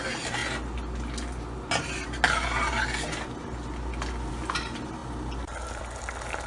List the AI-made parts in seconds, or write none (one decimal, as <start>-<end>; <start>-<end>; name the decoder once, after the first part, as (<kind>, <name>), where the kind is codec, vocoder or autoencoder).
none